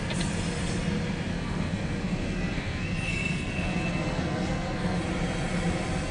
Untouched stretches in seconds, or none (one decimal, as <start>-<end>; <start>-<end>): 0.0-1.3; 5.0-6.1